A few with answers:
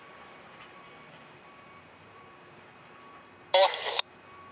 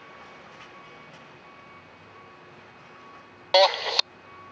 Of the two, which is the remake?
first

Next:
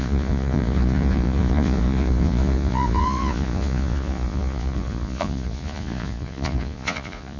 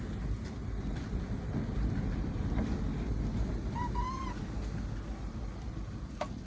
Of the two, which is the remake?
first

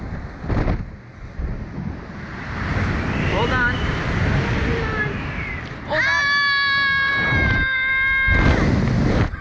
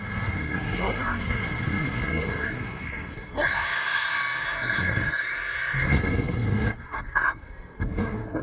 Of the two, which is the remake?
second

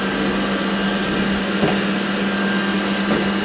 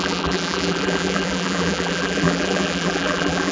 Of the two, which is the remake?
second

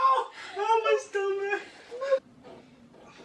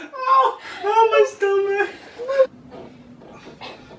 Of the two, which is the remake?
first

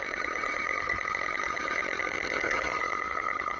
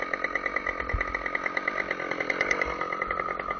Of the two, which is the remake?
first